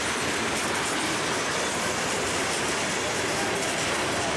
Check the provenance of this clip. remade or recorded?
recorded